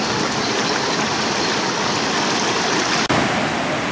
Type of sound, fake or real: real